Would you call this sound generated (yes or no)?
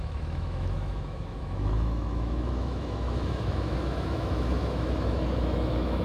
yes